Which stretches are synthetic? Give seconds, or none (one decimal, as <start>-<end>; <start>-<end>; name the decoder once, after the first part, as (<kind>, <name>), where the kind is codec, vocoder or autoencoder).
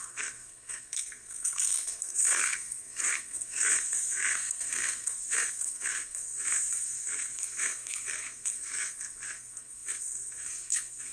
0.0-11.1 (codec, SNAC)